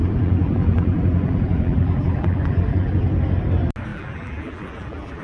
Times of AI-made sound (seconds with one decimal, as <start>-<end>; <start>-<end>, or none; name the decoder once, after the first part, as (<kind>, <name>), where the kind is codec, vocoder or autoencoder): 0.0-3.1 (vocoder, BigVGAN v2); 3.9-5.2